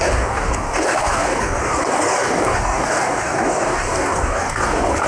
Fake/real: fake